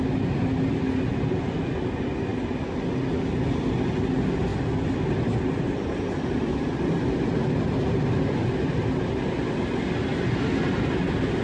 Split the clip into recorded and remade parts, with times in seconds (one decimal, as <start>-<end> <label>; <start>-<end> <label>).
0.0-1.1 recorded; 1.1-1.7 remade; 1.7-4.5 recorded; 4.5-9.0 remade; 9.0-11.4 recorded